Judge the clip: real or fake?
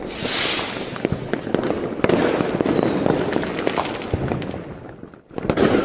real